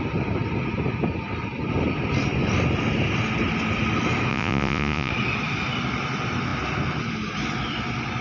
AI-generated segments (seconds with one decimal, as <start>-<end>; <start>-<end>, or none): 4.3-5.1